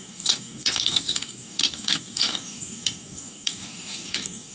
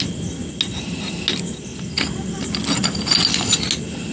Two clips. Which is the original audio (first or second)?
second